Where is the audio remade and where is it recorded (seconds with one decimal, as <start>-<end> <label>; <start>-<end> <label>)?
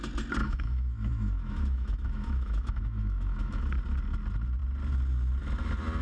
0.0-0.4 recorded; 0.4-3.6 remade; 3.6-6.0 recorded